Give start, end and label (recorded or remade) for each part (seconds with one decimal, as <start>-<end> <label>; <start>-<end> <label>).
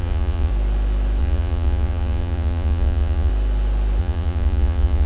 0.0-0.5 remade; 0.5-1.2 recorded; 1.2-3.3 remade; 3.3-4.0 recorded; 4.0-5.1 remade